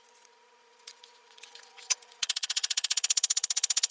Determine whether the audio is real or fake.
fake